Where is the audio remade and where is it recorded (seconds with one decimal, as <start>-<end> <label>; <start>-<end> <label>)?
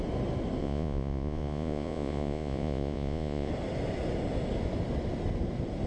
0.0-0.6 recorded; 0.6-3.5 remade; 3.5-5.9 recorded